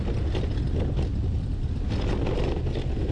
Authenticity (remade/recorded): recorded